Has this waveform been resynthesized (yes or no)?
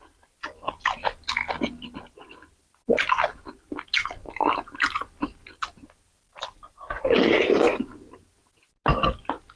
no